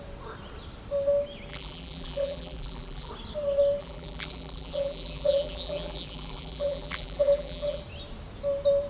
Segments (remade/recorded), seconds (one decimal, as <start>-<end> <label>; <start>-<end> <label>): 0.0-1.5 recorded; 1.5-3.1 remade; 3.1-3.8 recorded; 3.8-7.8 remade; 7.8-8.9 recorded